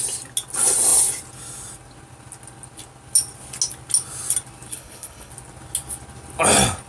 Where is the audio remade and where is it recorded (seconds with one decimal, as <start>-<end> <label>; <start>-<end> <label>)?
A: 0.0-4.7 recorded; 4.7-5.3 remade; 5.3-6.9 recorded